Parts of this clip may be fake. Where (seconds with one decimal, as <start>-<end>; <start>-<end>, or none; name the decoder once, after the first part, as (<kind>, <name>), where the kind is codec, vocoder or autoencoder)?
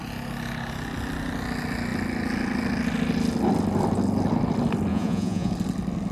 4.9-5.5 (vocoder, Vocos)